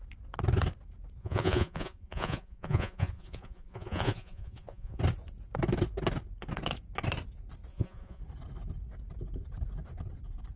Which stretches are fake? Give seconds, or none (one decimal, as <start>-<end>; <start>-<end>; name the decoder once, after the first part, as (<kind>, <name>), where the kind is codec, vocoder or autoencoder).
1.2-5.0 (vocoder, Vocos); 7.7-8.2